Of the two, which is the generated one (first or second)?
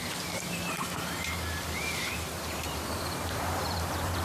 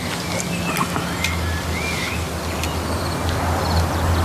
first